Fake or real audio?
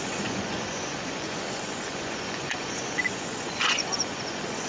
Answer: fake